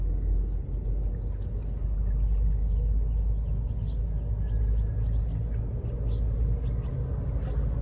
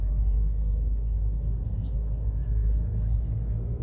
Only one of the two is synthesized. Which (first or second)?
second